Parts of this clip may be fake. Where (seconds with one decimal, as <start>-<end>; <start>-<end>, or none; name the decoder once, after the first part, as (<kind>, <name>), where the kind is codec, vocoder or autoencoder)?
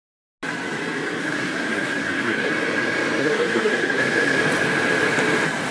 1.2-2.5 (codec, SNAC); 3.2-4.4